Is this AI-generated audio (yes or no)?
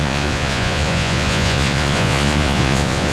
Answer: yes